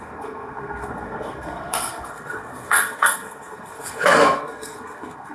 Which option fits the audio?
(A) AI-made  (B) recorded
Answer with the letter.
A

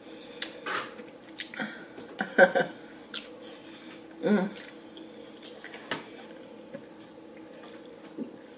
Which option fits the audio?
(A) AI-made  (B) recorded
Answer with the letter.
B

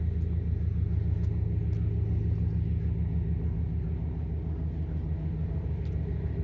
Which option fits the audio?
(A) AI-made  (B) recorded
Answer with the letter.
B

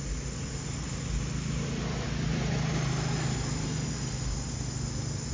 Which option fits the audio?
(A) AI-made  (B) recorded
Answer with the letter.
B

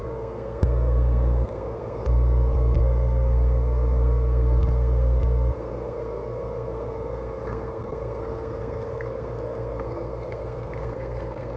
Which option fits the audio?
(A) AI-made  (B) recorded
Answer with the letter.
A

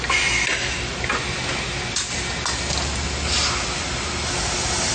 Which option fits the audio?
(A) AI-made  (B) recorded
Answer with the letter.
B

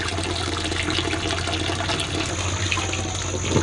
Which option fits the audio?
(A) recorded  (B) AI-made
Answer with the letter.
A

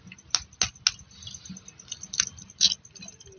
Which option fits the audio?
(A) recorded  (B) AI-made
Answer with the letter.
A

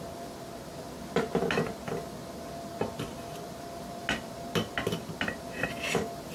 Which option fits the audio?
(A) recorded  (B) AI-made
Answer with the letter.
A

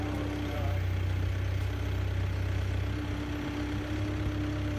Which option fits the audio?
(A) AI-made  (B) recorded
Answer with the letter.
B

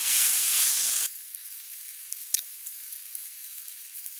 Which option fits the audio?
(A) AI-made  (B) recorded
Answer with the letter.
A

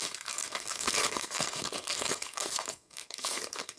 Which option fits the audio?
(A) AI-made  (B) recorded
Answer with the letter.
A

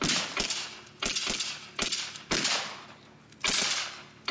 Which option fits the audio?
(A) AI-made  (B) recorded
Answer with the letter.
B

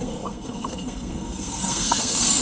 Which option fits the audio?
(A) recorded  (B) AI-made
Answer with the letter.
B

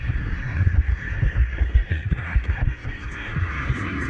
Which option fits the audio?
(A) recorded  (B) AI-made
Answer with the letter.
B